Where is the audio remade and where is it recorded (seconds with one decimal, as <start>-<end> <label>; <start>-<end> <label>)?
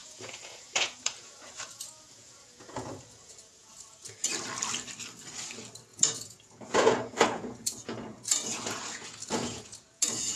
0.0-4.3 remade; 4.3-5.9 recorded; 5.9-10.4 remade